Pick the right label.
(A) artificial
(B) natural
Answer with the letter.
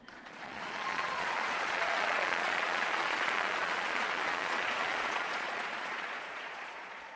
A